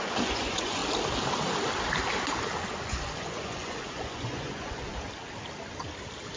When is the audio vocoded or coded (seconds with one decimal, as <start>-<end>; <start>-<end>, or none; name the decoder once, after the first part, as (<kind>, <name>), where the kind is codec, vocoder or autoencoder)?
0.0-0.8 (vocoder, Vocos); 2.8-4.9